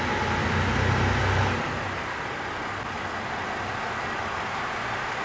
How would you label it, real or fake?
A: real